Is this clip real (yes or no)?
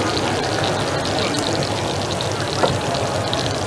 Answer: yes